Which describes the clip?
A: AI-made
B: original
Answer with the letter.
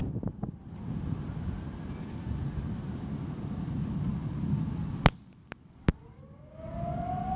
B